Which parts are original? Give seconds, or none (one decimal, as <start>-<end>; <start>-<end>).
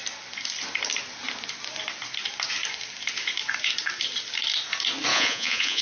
0.0-5.1